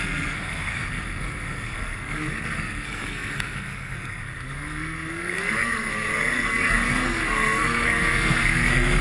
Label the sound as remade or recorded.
remade